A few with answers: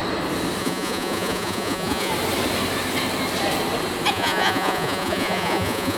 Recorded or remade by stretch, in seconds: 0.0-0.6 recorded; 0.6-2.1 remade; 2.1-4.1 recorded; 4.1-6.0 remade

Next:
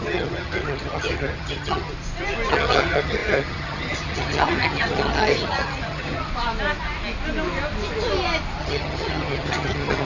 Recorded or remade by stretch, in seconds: 0.0-1.9 remade; 1.9-2.5 recorded; 2.5-6.3 remade; 6.3-8.6 recorded; 8.6-10.0 remade

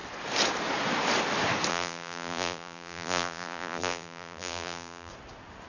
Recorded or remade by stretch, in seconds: 0.0-1.7 recorded; 1.7-5.1 remade; 5.1-5.7 recorded